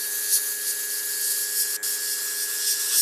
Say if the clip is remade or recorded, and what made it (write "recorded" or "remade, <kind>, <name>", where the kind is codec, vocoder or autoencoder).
recorded